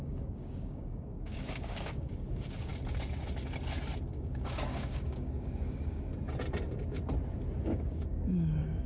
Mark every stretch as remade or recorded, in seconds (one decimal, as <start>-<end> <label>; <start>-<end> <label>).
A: 0.0-2.7 remade; 2.7-4.1 recorded; 4.1-6.1 remade; 6.1-7.6 recorded; 7.6-8.9 remade